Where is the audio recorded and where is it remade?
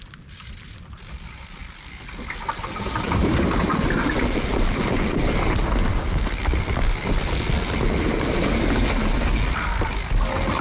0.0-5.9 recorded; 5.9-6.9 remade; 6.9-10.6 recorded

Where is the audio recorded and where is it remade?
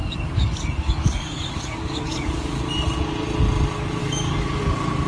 0.0-2.6 remade; 2.6-4.0 recorded; 4.0-4.6 remade; 4.6-5.1 recorded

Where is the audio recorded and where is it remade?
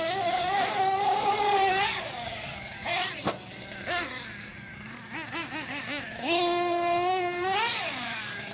0.0-2.9 remade; 2.9-3.6 recorded; 3.6-8.5 remade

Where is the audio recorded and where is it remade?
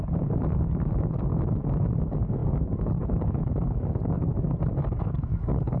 0.0-1.3 remade; 1.3-2.0 recorded; 2.0-4.3 remade; 4.3-4.8 recorded; 4.8-5.8 remade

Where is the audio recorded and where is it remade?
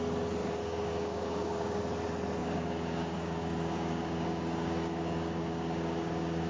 0.0-0.4 recorded; 0.4-1.8 remade; 1.8-2.4 recorded; 2.4-6.5 remade